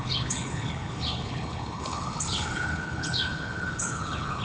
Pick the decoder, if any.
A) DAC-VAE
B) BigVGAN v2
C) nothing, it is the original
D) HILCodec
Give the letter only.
D